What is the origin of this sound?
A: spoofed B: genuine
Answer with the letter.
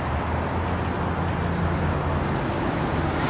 B